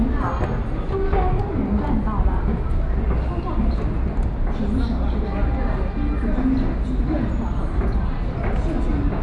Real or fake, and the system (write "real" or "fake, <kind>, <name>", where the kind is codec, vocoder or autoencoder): real